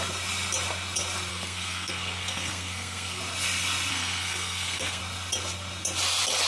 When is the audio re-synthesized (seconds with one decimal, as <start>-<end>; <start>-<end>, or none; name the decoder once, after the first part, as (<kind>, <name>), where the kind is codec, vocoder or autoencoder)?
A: 1.3-3.2 (codec, SNAC); 3.9-5.0